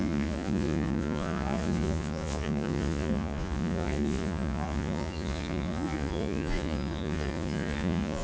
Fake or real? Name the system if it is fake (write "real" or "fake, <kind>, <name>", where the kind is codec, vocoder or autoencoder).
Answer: fake, vocoder, Vocos